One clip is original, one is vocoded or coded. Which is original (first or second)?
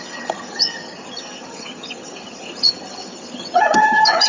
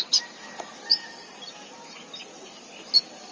second